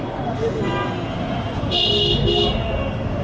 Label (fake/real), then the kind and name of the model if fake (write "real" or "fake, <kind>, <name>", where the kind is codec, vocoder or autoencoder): real